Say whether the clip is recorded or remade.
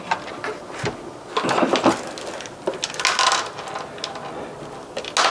recorded